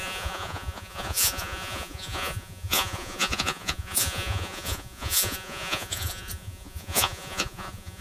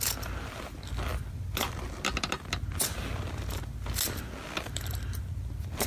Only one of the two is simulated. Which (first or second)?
first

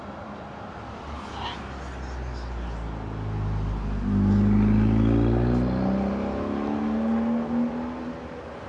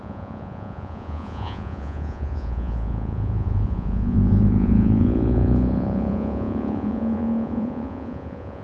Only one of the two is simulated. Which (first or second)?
second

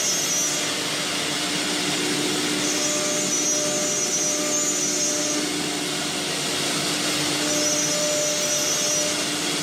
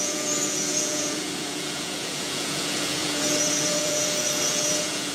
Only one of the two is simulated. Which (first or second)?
second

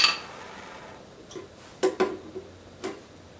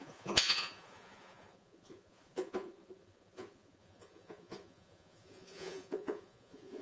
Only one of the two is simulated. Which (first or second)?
second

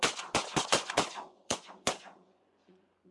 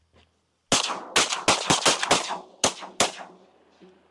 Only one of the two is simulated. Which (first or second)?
first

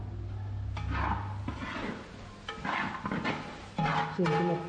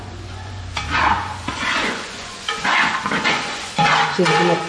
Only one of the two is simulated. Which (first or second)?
second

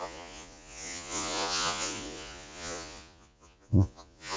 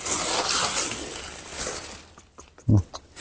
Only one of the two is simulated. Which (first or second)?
first